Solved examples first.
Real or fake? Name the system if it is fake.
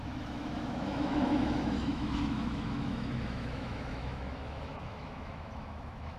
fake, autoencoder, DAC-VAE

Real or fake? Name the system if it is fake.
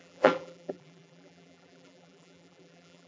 fake, vocoder, BigVGAN v2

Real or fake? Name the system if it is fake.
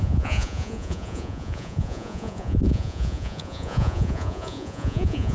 fake, vocoder, Vocos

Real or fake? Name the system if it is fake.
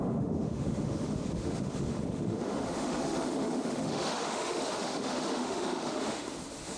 fake, autoencoder, DAC-VAE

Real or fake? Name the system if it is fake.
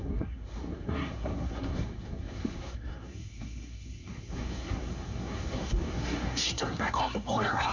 fake, codec, SNAC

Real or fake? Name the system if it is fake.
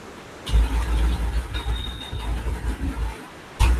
real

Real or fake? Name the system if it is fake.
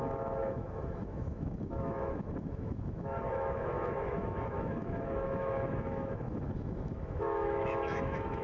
fake, autoencoder, DAC-VAE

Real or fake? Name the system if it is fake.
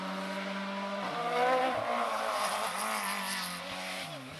real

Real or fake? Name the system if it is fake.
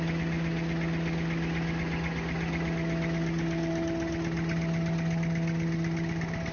real